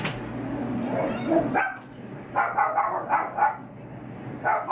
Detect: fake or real real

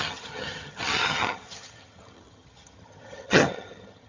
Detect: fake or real fake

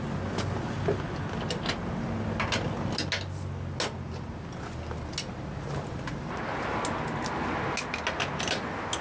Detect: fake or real real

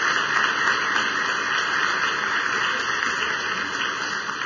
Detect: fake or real real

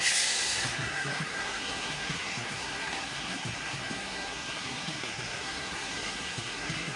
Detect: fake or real fake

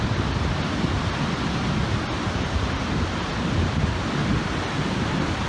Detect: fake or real real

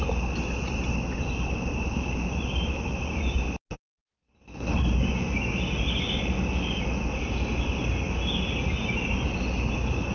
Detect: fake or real real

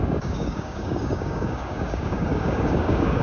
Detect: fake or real fake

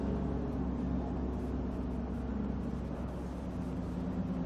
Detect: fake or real real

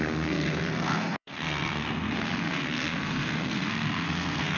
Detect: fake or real fake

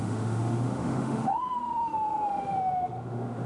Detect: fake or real fake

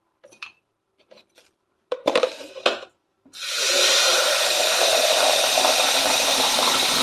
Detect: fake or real real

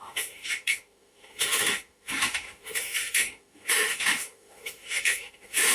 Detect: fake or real fake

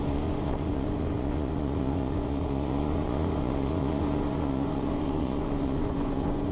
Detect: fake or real fake